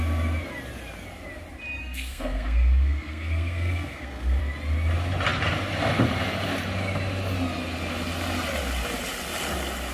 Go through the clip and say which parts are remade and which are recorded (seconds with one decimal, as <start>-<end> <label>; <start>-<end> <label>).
0.0-1.8 recorded; 1.8-4.4 remade; 4.4-9.9 recorded